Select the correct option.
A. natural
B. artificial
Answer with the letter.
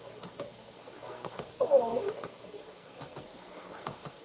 B